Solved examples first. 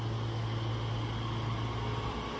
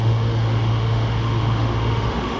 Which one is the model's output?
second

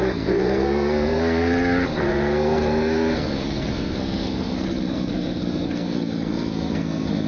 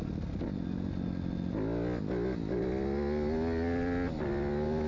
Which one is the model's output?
first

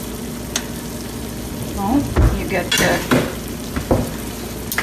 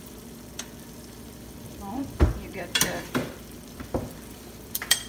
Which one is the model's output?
second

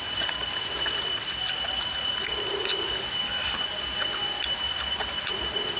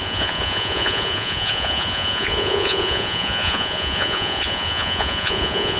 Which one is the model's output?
second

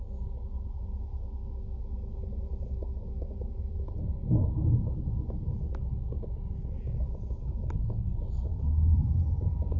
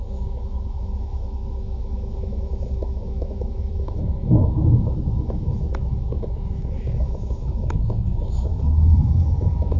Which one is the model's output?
second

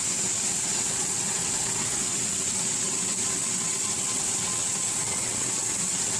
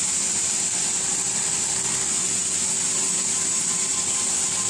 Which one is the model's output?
first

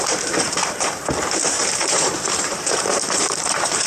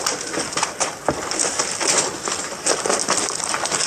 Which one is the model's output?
first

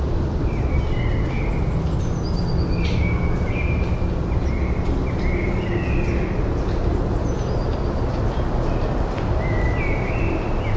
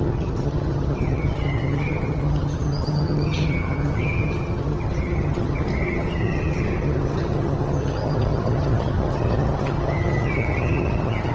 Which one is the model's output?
second